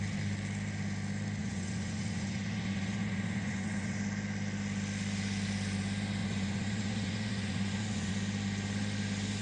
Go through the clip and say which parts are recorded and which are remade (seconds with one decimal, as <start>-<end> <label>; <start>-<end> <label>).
0.0-1.4 recorded; 1.4-4.0 remade; 4.0-6.2 recorded; 6.2-8.1 remade; 8.1-9.4 recorded